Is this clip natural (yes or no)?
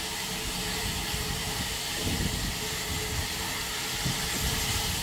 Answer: yes